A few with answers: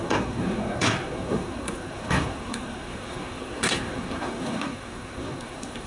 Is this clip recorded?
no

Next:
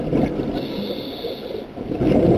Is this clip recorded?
yes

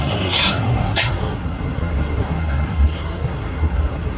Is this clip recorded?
no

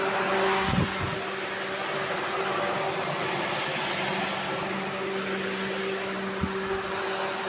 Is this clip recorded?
yes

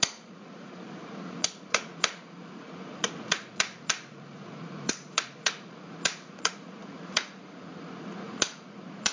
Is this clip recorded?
no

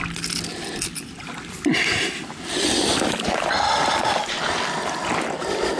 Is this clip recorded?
yes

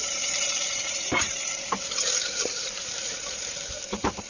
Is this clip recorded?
no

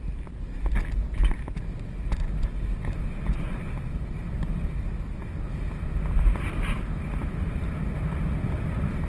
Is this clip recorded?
yes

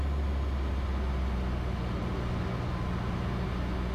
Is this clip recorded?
yes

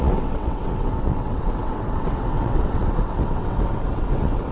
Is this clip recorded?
no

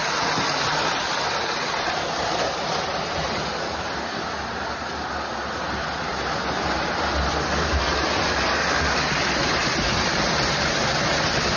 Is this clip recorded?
yes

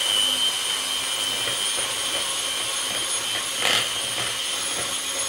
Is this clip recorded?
yes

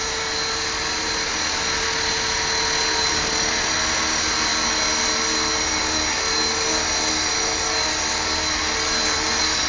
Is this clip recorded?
yes